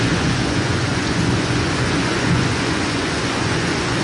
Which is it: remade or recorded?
remade